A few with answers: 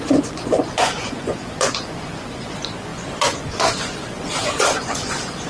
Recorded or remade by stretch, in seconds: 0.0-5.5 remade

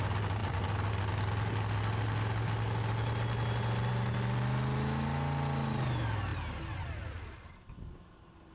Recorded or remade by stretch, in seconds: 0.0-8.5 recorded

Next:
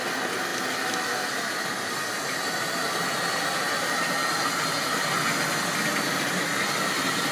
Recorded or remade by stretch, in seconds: 0.0-7.3 recorded

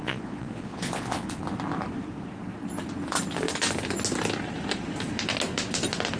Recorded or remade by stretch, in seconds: 0.0-1.4 remade; 1.4-6.2 recorded

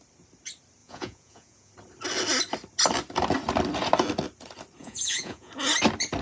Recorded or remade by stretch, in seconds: 0.0-0.8 recorded; 0.8-1.7 remade; 1.7-4.8 recorded; 4.8-5.5 remade; 5.5-6.2 recorded